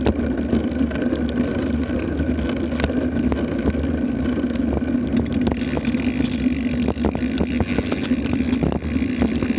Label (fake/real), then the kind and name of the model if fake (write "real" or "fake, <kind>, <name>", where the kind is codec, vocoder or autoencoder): real